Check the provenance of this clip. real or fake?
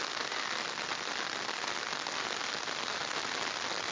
real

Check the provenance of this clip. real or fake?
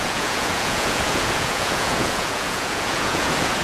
fake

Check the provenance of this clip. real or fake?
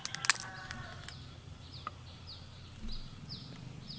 real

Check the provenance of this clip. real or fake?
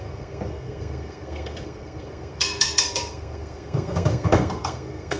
fake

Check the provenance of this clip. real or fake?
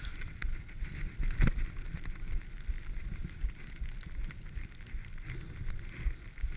real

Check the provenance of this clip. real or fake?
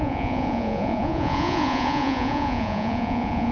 fake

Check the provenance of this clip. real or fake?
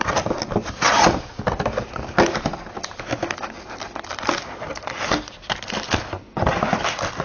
real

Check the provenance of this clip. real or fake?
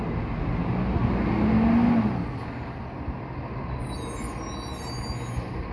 real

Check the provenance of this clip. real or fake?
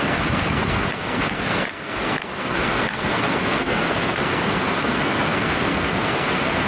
fake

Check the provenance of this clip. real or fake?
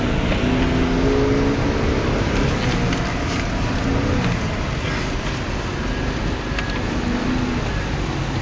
real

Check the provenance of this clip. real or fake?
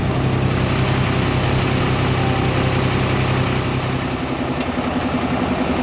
real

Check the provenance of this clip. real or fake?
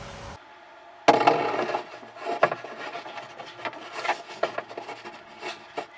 real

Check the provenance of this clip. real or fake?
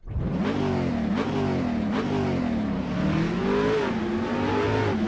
real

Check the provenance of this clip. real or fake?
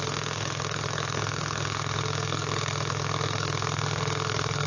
fake